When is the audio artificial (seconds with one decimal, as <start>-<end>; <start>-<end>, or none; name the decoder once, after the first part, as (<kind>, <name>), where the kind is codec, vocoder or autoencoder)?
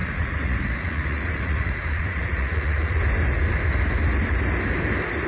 0.0-3.0 (vocoder, Vocos)